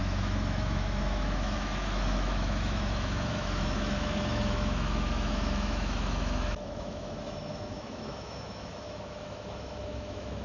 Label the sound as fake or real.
fake